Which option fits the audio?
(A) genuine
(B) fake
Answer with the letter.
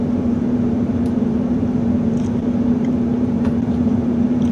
B